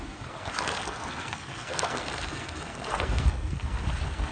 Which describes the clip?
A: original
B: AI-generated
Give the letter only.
B